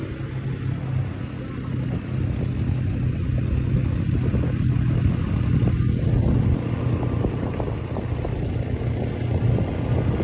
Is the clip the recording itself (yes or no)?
yes